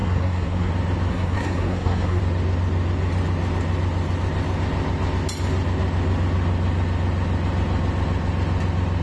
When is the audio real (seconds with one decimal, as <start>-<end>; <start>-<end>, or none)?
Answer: 0.7-1.1; 2.2-9.0